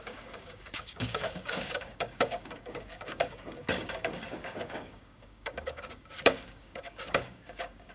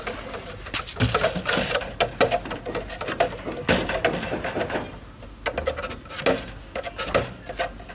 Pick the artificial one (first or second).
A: first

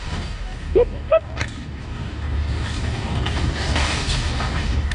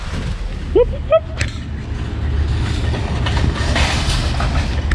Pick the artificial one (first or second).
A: first